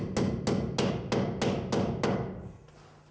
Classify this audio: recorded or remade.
recorded